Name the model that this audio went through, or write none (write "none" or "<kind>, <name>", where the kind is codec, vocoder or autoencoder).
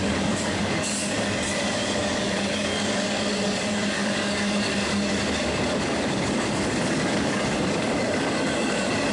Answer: codec, DAC